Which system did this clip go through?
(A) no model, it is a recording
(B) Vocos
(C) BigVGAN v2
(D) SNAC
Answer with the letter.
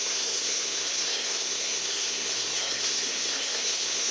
D